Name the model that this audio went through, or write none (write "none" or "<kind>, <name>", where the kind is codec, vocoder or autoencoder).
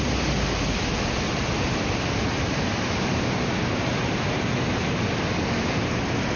none